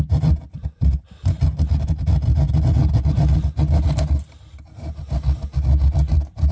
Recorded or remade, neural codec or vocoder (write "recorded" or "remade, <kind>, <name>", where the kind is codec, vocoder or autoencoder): recorded